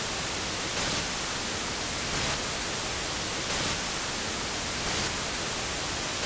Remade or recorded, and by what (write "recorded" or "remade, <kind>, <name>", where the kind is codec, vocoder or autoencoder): recorded